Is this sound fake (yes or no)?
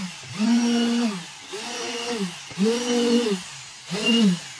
no